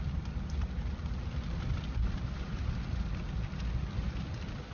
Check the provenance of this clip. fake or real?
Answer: real